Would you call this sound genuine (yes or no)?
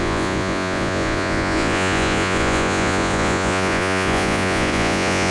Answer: no